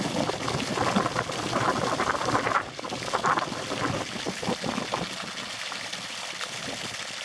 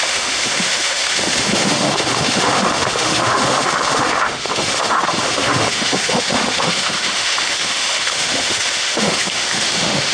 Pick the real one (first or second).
first